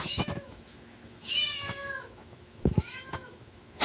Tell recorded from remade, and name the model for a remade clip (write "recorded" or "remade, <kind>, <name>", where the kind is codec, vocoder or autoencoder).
remade, autoencoder, DAC-VAE